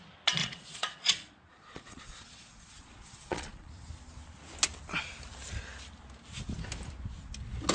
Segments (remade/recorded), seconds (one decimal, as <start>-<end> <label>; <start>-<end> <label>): 0.0-0.4 recorded; 0.4-3.7 remade; 3.7-7.7 recorded